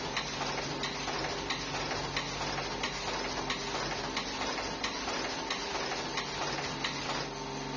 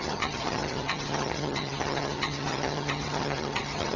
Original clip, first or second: first